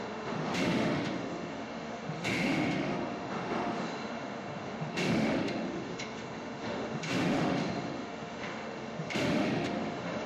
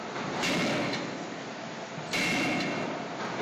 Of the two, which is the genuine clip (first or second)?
second